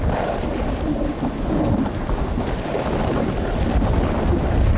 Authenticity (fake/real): real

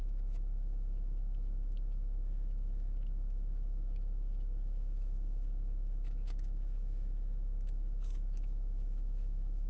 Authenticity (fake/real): fake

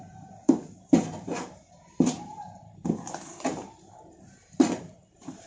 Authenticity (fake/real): fake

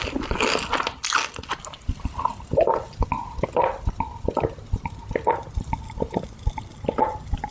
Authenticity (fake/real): real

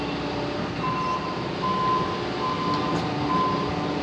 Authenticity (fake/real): real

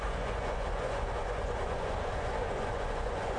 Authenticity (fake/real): fake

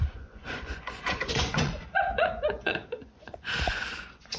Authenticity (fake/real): fake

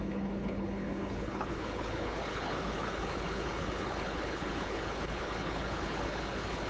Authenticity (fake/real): fake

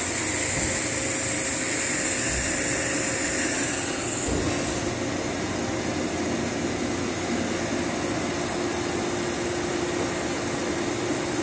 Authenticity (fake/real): real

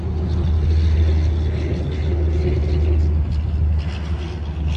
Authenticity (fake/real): real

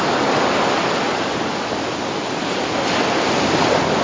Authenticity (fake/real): real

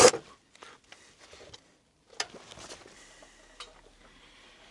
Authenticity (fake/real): real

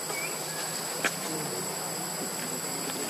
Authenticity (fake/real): real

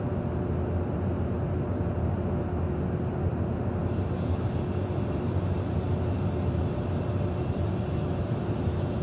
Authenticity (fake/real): real